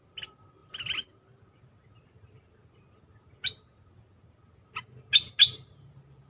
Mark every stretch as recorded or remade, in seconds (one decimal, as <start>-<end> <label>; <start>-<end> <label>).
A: 0.0-6.3 recorded